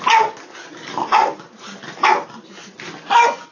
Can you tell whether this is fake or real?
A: real